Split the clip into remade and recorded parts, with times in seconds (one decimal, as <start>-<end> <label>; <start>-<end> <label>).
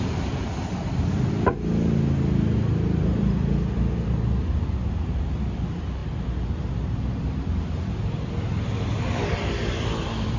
0.0-10.4 recorded